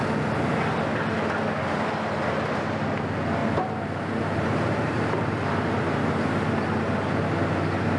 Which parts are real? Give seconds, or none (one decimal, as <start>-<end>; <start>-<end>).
0.0-3.4; 5.7-8.0